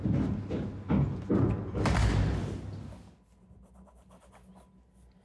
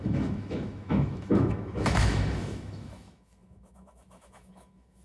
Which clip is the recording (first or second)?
first